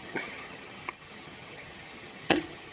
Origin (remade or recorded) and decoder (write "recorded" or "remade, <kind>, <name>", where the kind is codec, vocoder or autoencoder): remade, vocoder, HiFi-GAN